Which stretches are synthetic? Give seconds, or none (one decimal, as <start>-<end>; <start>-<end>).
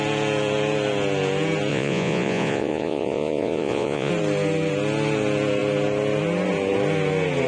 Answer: 1.7-4.1